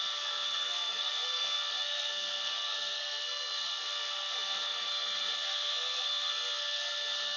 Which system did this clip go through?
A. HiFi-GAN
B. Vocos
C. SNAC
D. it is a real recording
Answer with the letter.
C